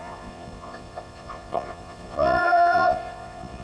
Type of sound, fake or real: fake